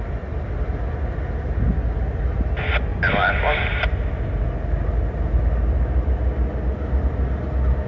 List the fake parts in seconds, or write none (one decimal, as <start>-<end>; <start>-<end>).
none